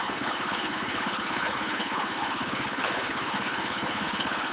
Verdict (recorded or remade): remade